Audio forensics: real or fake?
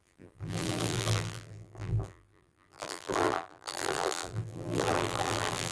fake